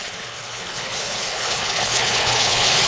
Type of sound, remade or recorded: remade